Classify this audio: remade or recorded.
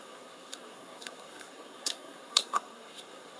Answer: remade